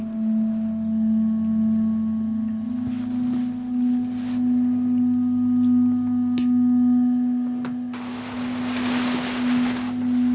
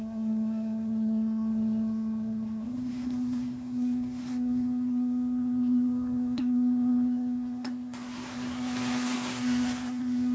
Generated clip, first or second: second